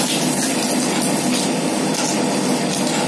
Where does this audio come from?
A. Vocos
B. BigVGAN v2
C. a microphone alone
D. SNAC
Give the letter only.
C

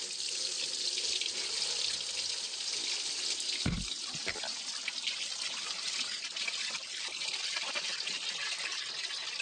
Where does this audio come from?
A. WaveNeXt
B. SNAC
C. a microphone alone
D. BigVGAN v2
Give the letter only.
C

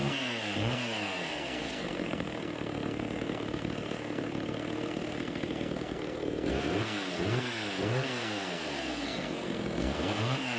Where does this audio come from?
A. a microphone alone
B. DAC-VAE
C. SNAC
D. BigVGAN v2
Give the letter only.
C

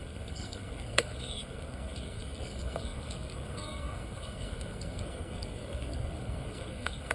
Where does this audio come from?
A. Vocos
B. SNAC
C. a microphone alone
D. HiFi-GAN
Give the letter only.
B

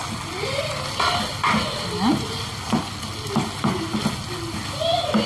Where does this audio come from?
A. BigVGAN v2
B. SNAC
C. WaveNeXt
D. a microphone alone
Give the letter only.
D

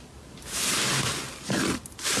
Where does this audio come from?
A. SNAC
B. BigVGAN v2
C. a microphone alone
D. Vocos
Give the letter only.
C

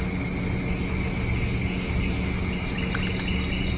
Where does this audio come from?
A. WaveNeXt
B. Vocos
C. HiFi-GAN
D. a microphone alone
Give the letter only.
D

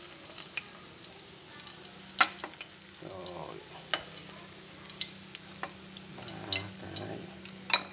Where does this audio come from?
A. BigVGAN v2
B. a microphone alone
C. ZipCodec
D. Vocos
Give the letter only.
B